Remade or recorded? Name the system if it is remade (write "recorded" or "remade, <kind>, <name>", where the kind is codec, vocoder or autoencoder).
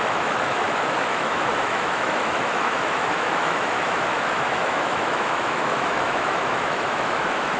remade, autoencoder, DAC-VAE